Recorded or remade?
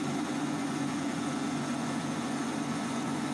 remade